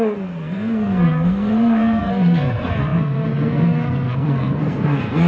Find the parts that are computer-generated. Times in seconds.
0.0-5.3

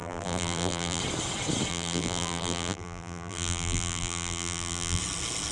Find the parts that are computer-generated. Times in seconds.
0.0-1.0; 1.7-5.0

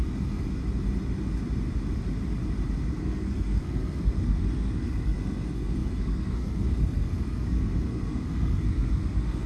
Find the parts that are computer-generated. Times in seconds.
0.0-0.6; 3.0-9.5

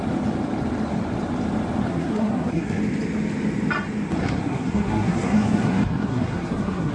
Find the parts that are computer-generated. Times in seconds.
1.9-2.8; 4.2-6.9

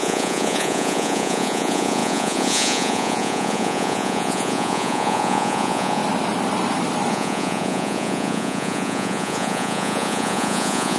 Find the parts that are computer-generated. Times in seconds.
0.0-6.0; 7.1-11.0

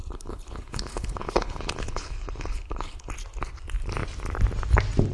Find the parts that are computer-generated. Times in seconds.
0.0-3.1

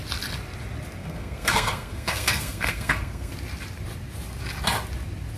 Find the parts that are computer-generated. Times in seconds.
1.0-3.3